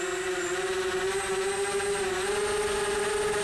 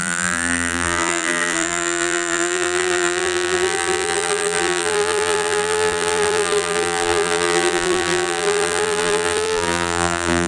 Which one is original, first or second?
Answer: first